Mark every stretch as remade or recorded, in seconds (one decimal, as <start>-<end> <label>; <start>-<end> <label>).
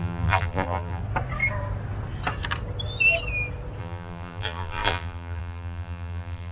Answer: 0.0-1.0 remade; 1.0-3.8 recorded; 3.8-6.5 remade